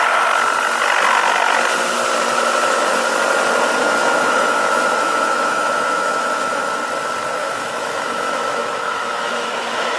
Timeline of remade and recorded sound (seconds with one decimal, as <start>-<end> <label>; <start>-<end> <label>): 0.0-3.8 recorded; 3.8-6.7 remade; 6.7-7.4 recorded; 7.4-10.0 remade